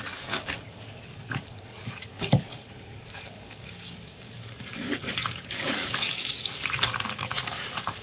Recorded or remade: remade